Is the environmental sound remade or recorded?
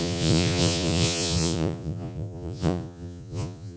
remade